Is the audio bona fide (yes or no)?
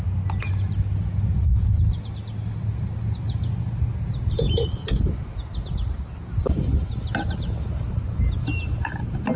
yes